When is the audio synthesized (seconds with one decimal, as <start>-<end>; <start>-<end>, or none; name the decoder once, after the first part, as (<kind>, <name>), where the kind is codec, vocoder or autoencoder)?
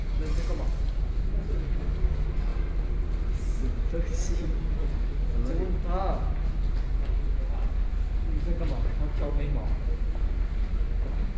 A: none